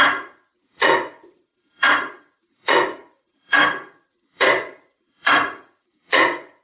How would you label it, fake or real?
fake